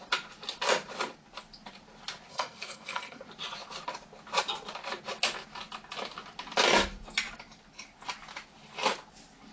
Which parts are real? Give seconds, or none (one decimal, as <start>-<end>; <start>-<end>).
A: 0.0-2.3; 3.2-9.5